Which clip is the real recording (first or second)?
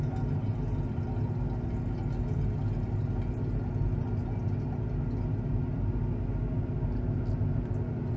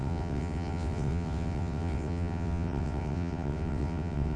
first